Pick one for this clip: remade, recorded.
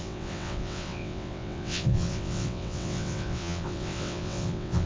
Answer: remade